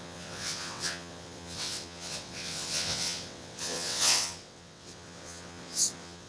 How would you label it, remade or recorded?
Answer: remade